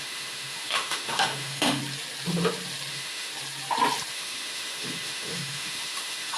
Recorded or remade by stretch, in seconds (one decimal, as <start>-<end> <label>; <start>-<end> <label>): 0.0-1.8 remade; 1.8-2.9 recorded; 2.9-3.3 remade; 3.3-4.1 recorded; 4.1-6.4 remade